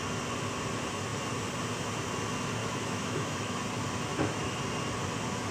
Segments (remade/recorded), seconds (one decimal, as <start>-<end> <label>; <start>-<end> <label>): 0.0-2.6 recorded; 2.6-3.6 remade; 3.6-4.1 recorded; 4.1-4.6 remade; 4.6-5.5 recorded